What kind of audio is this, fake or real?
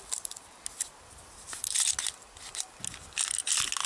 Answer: real